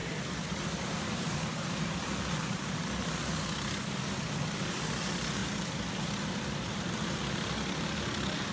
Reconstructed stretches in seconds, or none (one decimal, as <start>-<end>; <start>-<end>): 0.0-2.1; 5.4-6.0